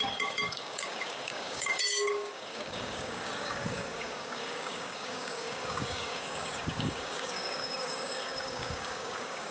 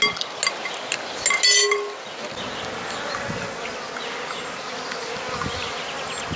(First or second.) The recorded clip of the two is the second